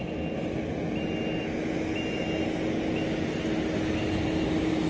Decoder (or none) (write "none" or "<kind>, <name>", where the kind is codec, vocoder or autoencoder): none